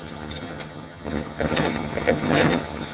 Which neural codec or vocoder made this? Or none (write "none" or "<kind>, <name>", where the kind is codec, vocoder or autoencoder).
vocoder, HiFi-GAN